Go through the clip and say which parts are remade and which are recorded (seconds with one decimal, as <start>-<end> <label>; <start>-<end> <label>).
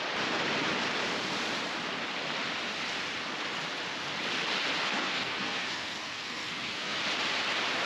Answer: 0.0-5.0 recorded; 5.0-7.0 remade; 7.0-7.9 recorded